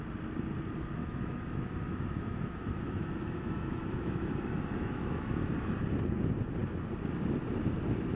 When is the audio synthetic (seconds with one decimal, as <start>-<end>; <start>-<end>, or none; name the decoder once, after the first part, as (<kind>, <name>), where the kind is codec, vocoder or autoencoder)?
1.0-5.5 (autoencoder, DAC-VAE)